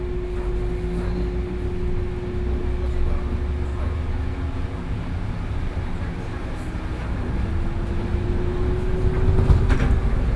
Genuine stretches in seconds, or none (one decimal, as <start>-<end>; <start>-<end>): 0.0-3.7; 5.3-10.4

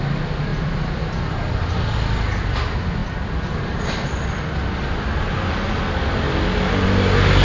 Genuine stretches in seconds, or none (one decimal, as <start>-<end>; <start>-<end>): 0.0-7.4

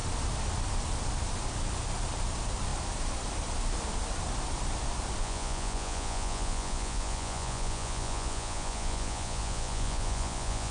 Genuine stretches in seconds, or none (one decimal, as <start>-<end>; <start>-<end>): 0.0-5.2

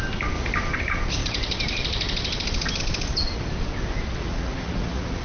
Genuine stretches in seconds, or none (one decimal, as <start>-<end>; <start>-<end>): 0.0-4.2

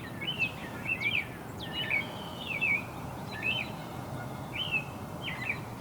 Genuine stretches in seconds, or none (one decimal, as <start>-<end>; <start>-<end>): 0.0-0.6; 4.1-5.8

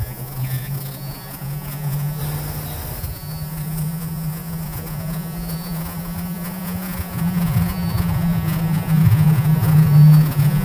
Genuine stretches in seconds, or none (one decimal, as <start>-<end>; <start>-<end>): 2.2-3.0

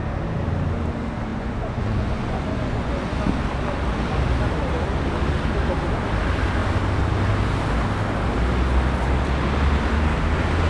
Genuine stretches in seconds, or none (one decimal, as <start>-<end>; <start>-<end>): 0.0-1.3; 3.2-10.7

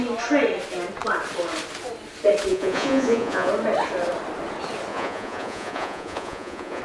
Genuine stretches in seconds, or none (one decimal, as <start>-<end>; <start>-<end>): 0.0-2.5; 3.5-4.9